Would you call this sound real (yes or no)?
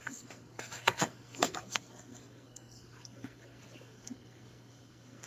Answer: no